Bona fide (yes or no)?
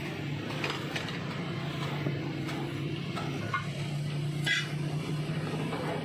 yes